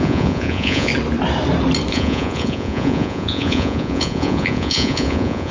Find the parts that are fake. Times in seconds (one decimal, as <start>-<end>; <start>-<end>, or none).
0.0-0.9; 1.9-5.5